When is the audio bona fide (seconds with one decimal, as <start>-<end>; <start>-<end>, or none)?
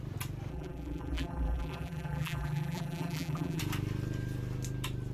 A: 0.0-0.5; 3.6-5.1